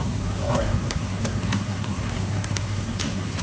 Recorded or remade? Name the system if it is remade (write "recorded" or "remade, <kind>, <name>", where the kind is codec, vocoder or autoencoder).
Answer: remade, codec, SNAC